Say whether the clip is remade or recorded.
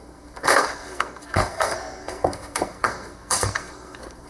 remade